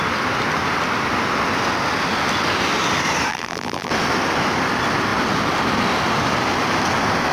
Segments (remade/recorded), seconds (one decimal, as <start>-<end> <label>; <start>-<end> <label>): 0.0-3.3 recorded; 3.3-3.9 remade; 3.9-7.3 recorded